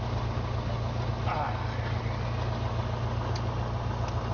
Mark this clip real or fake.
real